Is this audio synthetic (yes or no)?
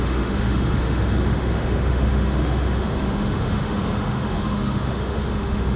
yes